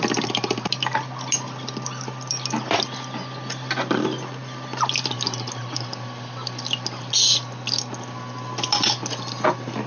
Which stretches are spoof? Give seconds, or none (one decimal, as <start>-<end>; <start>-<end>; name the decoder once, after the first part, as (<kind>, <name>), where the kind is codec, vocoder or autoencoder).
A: none